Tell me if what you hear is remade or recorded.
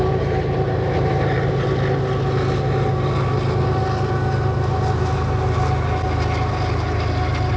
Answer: recorded